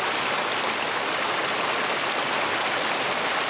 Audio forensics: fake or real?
real